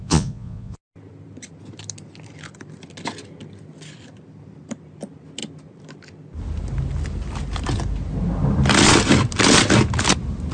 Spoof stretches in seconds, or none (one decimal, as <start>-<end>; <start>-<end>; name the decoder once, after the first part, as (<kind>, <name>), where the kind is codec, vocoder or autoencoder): 0.0-0.8 (vocoder, Vocos)